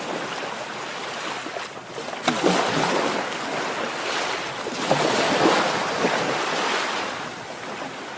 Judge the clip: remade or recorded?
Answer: recorded